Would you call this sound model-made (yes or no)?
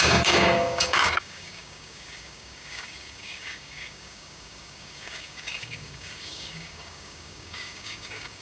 yes